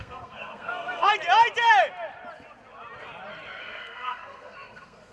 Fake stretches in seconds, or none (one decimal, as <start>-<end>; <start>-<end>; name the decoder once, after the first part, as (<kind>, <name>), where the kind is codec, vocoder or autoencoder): 0.0-1.1 (codec, SNAC); 3.6-5.1